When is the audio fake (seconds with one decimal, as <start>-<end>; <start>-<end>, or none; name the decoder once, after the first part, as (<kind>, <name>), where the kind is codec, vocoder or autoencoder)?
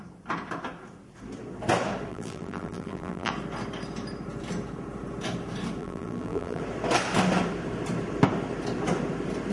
2.1-3.3 (vocoder, BigVGAN v2); 5.8-6.6